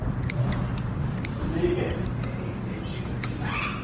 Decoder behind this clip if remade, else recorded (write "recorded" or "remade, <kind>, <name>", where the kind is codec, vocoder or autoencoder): recorded